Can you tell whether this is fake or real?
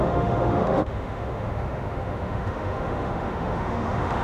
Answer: fake